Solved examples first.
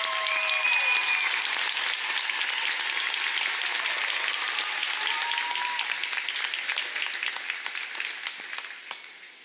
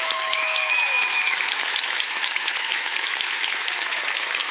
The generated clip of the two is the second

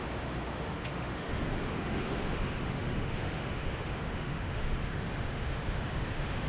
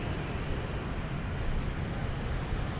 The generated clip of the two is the first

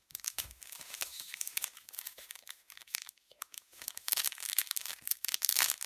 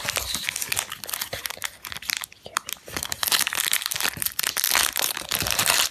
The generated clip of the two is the first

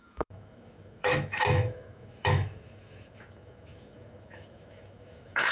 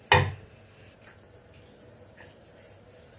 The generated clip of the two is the first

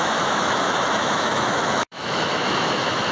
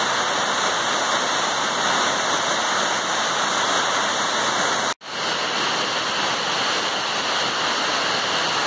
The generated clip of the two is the first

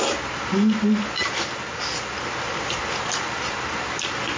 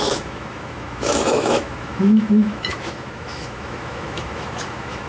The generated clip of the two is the second